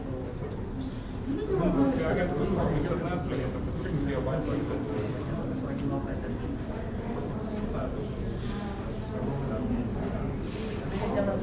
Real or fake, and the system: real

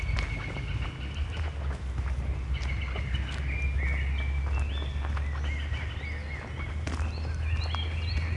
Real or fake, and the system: real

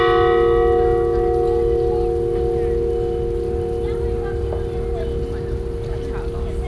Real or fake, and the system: real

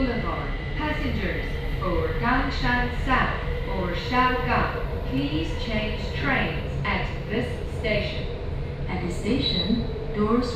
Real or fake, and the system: real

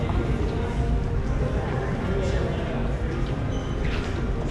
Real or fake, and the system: real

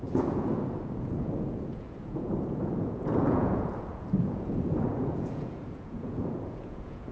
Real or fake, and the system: fake, vocoder, Vocos